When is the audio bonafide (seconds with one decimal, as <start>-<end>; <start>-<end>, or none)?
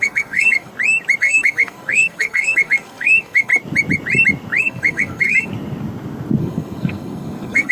0.7-1.2; 3.5-4.6; 5.5-6.4